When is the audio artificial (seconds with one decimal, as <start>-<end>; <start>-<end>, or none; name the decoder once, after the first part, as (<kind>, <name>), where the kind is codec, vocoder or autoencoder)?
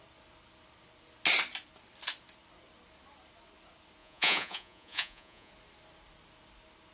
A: 4.0-5.5 (vocoder, Vocos)